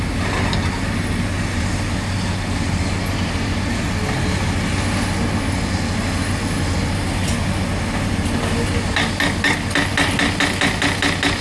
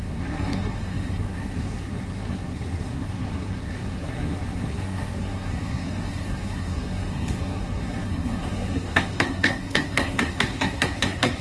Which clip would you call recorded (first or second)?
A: first